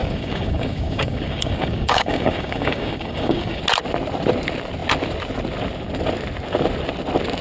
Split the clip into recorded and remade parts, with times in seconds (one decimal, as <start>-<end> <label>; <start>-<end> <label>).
0.0-3.6 remade; 3.6-7.4 recorded